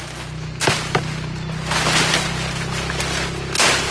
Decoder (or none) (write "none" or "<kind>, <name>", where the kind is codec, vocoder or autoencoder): none